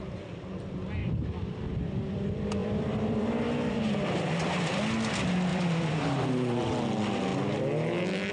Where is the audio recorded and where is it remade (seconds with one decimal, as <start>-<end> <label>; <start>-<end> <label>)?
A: 0.0-1.0 recorded; 1.0-2.0 remade; 2.0-2.6 recorded; 2.6-4.8 remade; 4.8-5.5 recorded; 5.5-6.7 remade; 6.7-8.3 recorded